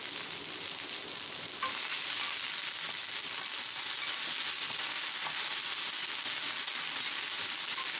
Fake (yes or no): no